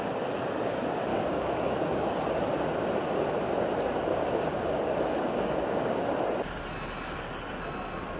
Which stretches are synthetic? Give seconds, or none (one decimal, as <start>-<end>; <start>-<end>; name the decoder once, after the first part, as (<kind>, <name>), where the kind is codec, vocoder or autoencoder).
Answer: 1.1-2.4 (codec, DAC); 4.1-6.1